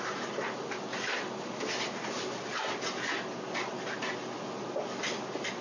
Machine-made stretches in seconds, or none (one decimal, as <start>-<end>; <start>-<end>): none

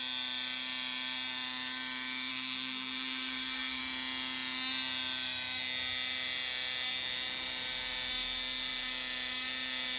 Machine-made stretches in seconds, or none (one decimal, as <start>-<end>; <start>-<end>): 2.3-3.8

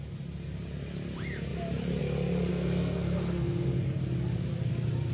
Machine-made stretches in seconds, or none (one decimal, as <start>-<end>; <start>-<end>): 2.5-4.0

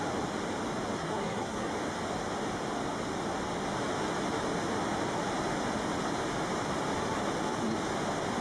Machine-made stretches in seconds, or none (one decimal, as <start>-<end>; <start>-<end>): 1.0-1.7

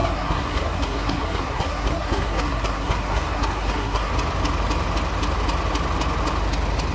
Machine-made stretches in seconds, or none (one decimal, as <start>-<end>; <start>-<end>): 0.0-4.1

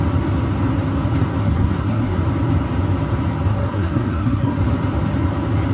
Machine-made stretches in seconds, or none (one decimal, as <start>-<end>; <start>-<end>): 1.4-2.2; 3.5-4.6